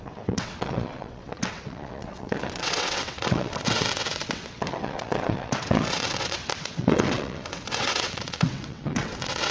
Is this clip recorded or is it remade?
remade